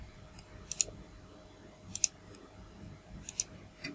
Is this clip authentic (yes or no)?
yes